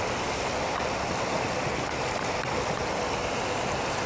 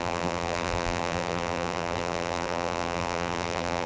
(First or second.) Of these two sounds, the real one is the first